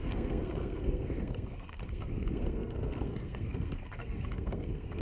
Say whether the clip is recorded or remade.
remade